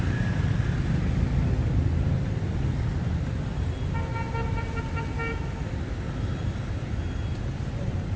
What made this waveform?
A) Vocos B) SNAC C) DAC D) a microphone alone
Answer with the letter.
D